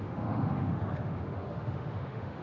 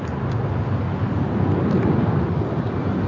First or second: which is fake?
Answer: first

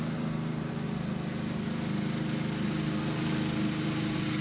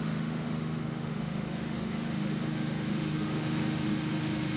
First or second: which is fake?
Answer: second